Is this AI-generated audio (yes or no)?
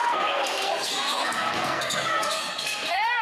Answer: yes